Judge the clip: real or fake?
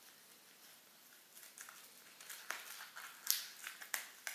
real